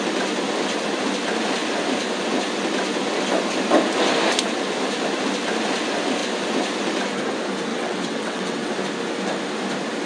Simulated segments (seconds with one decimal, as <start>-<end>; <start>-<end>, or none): 7.7-8.7